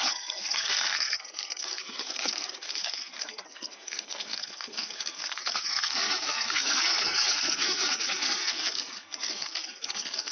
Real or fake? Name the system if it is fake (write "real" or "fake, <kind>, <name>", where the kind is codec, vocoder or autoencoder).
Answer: fake, codec, SNAC